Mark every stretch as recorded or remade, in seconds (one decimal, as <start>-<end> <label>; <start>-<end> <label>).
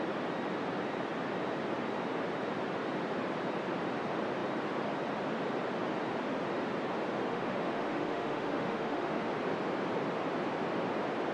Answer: 0.0-7.3 recorded; 7.3-9.3 remade; 9.3-11.3 recorded